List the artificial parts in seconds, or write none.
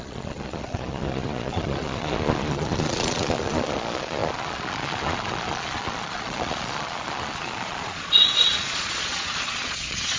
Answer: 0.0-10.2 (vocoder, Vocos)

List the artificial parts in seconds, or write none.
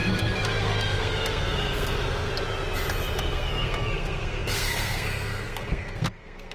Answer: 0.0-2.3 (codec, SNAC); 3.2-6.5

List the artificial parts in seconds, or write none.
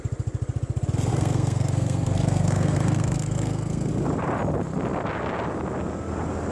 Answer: 1.1-3.9 (codec, SNAC)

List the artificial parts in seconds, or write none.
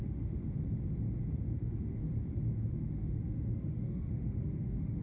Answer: 0.0-0.4 (autoencoder, DAC-VAE); 1.4-2.0; 2.7-5.0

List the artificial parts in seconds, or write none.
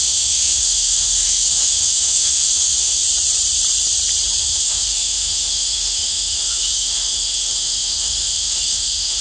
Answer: 0.0-3.0 (autoencoder, DAC-VAE); 4.4-9.2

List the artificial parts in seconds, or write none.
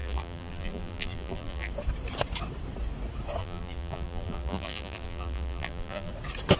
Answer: 0.0-1.7 (vocoder, BigVGAN v2); 3.4-6.1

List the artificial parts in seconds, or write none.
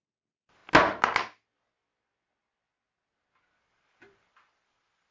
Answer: 0.0-0.6 (vocoder, BigVGAN v2); 3.6-5.1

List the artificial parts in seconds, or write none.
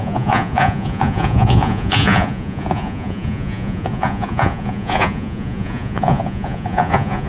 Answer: 0.0-7.3 (vocoder, Vocos)